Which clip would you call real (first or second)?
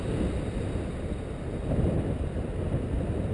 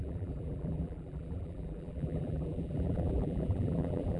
first